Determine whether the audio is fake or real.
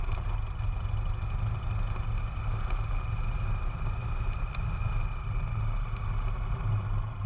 real